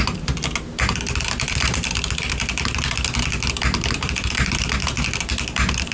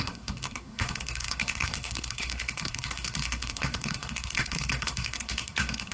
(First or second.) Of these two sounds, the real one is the first